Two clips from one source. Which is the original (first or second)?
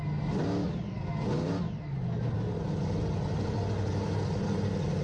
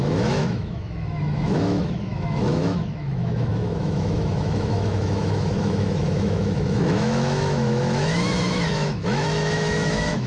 first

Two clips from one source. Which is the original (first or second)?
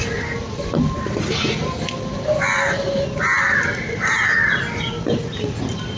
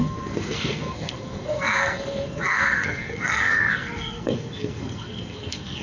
first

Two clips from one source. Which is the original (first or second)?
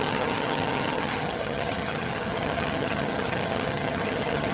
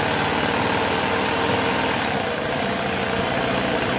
second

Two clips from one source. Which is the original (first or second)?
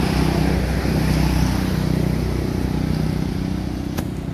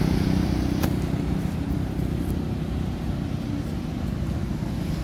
first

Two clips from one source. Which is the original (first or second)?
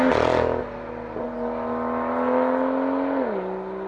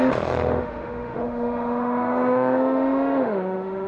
first